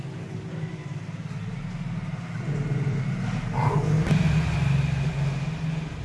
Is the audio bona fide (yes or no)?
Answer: yes